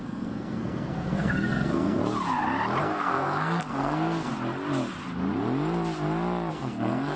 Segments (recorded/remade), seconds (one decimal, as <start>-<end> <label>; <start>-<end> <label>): 0.0-2.0 remade; 2.0-2.8 recorded; 2.8-4.3 remade; 4.3-6.5 recorded; 6.5-7.2 remade